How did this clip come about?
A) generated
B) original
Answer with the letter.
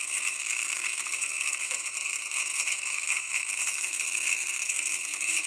A